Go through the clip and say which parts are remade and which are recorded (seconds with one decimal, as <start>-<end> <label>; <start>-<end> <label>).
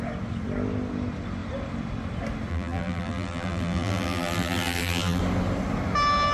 0.0-2.5 recorded; 2.5-5.2 remade; 5.2-6.3 recorded